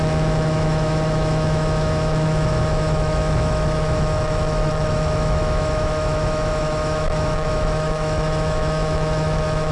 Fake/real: fake